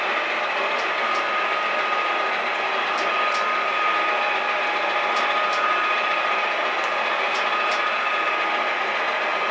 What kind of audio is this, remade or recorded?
recorded